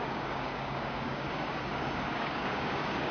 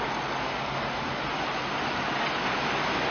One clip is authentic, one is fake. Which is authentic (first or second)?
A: second